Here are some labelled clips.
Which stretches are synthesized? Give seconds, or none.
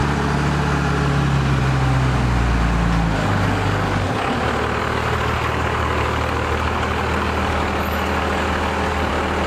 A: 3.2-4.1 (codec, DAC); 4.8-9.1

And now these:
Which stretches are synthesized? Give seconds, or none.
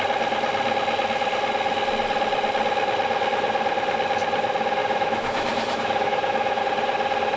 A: 4.8-6.6 (autoencoder, DAC-VAE)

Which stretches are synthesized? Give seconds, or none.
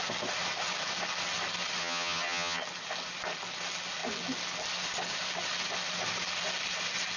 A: 1.8-2.6 (vocoder, HiFi-GAN)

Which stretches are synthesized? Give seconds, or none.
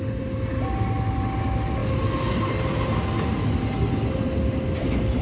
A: none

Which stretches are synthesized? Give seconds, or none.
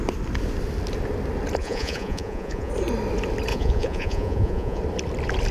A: 1.6-2.7 (vocoder, Vocos); 3.5-4.8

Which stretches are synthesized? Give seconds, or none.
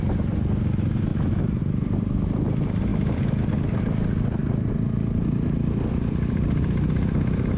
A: 1.1-1.6 (vocoder, BigVGAN v2); 2.9-3.5; 4.4-7.6